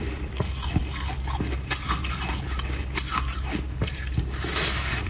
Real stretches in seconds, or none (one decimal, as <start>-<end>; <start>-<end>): 0.8-3.9